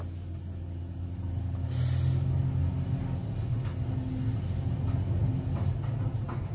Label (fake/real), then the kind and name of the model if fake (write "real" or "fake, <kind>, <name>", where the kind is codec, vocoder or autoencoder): real